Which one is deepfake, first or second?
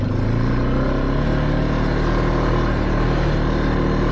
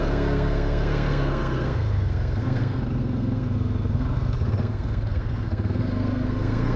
second